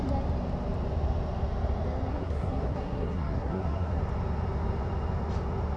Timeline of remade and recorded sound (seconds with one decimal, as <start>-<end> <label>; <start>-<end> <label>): 0.0-2.1 recorded; 2.1-4.0 remade; 4.0-5.8 recorded